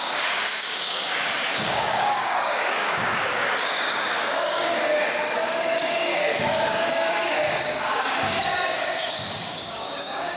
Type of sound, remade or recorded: remade